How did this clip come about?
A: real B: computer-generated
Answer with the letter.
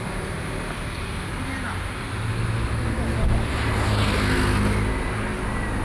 A